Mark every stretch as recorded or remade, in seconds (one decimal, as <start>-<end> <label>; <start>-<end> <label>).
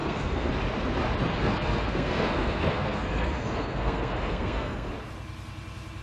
0.0-0.5 remade; 0.5-1.3 recorded; 1.3-4.9 remade; 4.9-6.0 recorded